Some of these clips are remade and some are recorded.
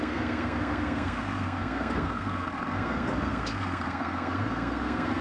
remade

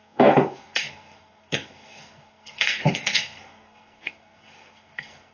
remade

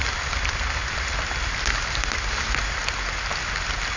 recorded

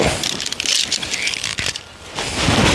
recorded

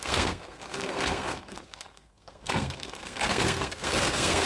remade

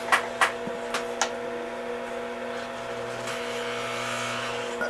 recorded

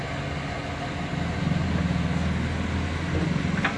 recorded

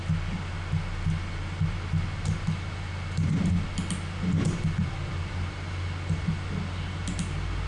recorded